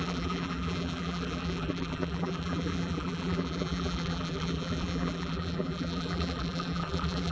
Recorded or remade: remade